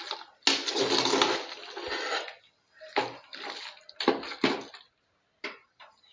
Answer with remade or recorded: recorded